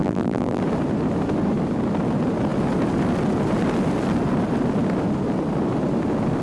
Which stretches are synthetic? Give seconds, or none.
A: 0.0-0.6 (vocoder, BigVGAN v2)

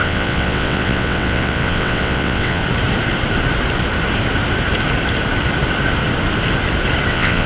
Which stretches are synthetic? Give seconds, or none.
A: 0.0-2.6 (vocoder, WaveNeXt); 7.1-7.5

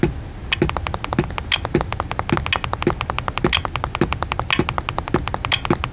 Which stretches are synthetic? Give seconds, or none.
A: none

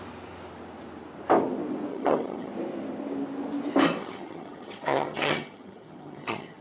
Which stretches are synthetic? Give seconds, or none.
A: 1.9-2.5 (vocoder, HiFi-GAN); 4.0-6.6

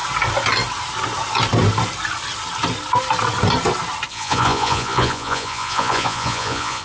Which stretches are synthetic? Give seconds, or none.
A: 4.1-6.8 (vocoder, Vocos)

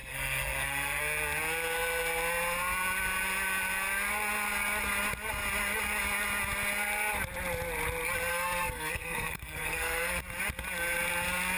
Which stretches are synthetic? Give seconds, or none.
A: 0.0-1.0 (codec, SNAC); 8.3-10.2

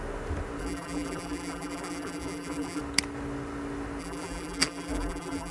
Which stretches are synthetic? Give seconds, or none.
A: 0.6-2.8 (vocoder, BigVGAN v2); 4.0-5.5

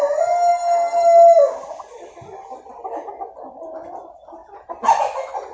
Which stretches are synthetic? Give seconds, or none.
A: none